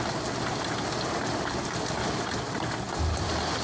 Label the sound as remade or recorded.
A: recorded